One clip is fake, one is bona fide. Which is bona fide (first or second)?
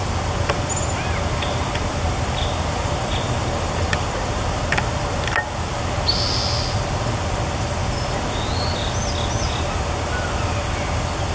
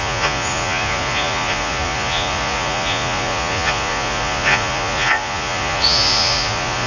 first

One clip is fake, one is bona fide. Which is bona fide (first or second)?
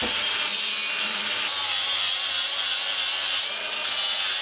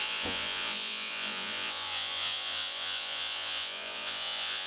first